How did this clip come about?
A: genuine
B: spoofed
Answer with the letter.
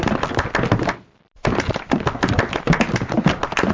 A